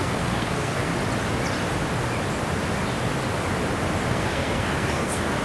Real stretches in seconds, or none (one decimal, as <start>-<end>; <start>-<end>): 0.9-4.1